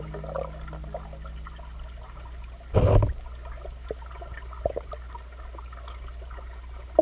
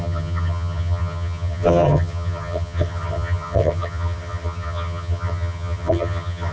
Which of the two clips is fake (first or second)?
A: second